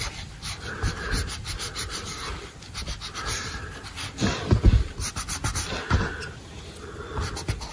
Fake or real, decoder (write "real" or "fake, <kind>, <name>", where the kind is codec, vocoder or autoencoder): real